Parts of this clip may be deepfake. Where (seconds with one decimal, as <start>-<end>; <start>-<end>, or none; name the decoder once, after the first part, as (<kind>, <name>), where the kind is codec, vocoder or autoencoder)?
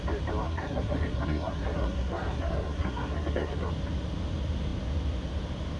0.4-3.7 (codec, SNAC)